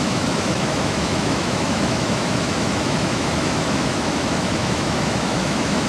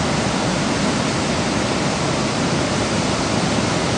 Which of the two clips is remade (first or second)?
first